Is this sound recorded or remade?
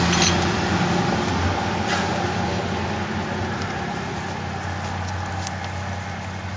recorded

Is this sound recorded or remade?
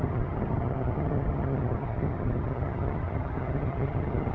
remade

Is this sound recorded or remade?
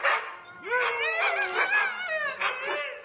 recorded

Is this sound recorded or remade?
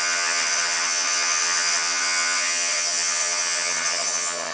remade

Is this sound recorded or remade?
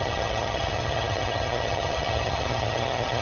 remade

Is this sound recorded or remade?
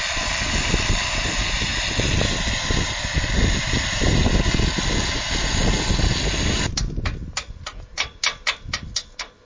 recorded